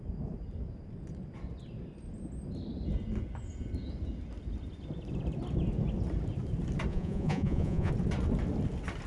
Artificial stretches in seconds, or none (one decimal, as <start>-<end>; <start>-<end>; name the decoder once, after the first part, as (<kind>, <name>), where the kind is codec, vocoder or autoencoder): 6.9-7.9 (vocoder, Vocos)